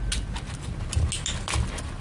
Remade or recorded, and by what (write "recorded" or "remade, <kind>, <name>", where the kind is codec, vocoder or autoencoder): recorded